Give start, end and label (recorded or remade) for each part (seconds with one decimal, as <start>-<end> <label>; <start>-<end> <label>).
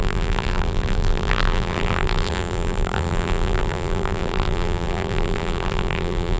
0.0-6.4 remade